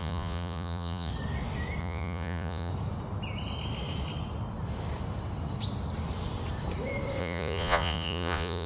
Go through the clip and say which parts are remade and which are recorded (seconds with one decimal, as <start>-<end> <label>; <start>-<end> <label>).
0.0-1.1 remade; 1.1-1.8 recorded; 1.8-2.7 remade; 2.7-7.2 recorded; 7.2-8.7 remade